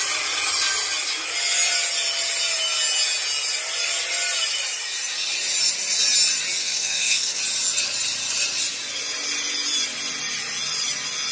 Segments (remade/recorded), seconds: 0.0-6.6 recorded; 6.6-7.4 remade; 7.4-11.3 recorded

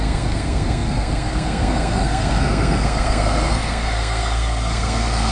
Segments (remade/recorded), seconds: 0.0-5.3 remade

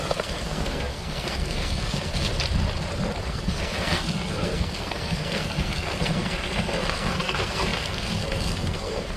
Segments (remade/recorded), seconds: 0.0-2.3 remade; 2.3-3.2 recorded; 3.2-9.2 remade

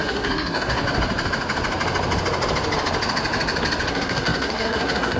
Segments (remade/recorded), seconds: 0.0-0.8 remade; 0.8-3.9 recorded; 3.9-5.2 remade

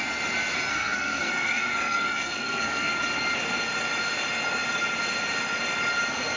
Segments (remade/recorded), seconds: 0.0-0.7 recorded; 0.7-2.9 remade; 2.9-6.4 recorded